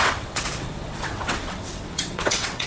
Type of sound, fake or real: fake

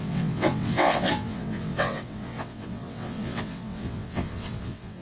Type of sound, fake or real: fake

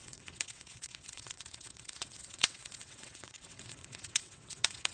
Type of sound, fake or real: fake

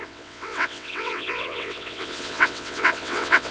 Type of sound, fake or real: fake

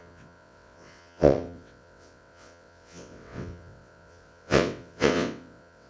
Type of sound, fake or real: fake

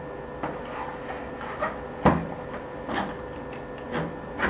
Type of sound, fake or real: real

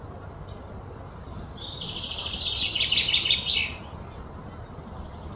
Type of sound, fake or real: real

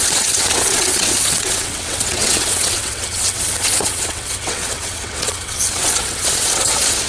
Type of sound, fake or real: fake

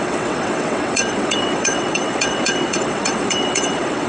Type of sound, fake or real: fake